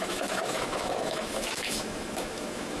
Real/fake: fake